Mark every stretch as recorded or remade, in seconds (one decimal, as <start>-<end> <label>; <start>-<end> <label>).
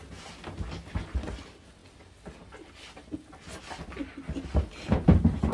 0.0-5.5 recorded